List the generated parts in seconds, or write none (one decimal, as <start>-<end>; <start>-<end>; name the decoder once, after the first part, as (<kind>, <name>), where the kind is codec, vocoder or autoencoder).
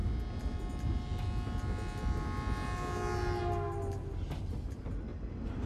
none